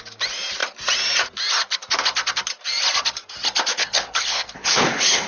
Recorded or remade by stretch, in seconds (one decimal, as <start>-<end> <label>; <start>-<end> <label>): 0.0-3.7 recorded; 3.7-5.3 remade